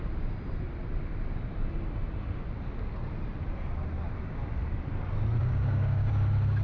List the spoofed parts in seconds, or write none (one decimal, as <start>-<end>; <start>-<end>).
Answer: 5.4-6.1